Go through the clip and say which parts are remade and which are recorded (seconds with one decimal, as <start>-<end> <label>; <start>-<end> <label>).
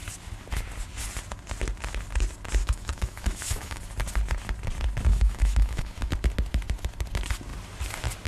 0.0-2.6 recorded; 2.6-3.8 remade; 3.8-5.1 recorded; 5.1-6.1 remade; 6.1-8.3 recorded